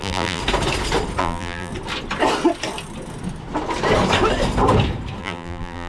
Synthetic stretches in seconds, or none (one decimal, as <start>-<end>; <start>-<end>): 0.0-0.4; 1.2-1.7; 5.2-5.9